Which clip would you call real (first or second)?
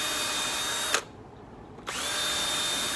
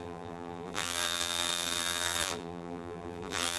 first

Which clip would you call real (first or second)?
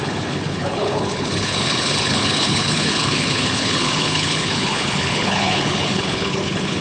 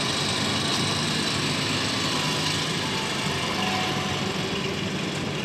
second